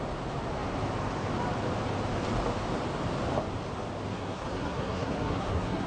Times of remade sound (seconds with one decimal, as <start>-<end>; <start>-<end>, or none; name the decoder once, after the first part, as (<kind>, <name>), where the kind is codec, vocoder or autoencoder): 4.1-5.9 (codec, SNAC)

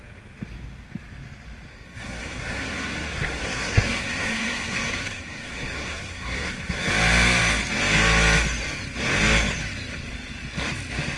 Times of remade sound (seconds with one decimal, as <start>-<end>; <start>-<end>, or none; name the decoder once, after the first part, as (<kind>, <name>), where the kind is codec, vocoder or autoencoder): 1.7-6.9 (codec, SNAC)

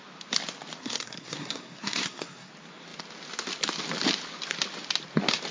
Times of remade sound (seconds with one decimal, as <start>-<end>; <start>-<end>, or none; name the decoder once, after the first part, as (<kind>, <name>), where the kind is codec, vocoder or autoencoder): 0.8-2.5 (codec, SNAC)

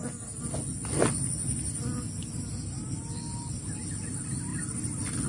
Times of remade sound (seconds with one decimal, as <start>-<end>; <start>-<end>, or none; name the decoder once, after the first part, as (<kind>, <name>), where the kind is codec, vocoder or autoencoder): none

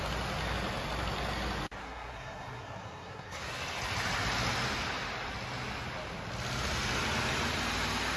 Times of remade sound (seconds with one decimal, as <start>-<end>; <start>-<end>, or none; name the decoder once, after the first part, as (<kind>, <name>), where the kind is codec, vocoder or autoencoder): 1.8-3.5 (codec, SNAC)

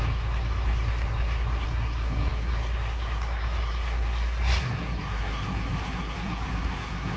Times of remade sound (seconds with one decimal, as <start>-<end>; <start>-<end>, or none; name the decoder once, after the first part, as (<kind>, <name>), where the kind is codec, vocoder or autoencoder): 0.0-7.2 (codec, SNAC)

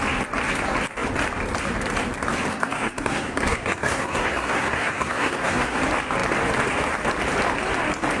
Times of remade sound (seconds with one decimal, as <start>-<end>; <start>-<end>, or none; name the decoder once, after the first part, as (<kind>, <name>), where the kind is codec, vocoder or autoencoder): 2.5-5.8 (codec, SNAC)